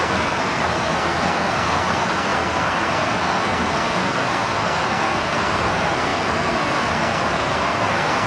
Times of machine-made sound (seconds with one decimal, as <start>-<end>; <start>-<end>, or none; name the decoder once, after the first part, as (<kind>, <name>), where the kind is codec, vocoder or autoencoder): 0.0-8.3 (codec, SNAC)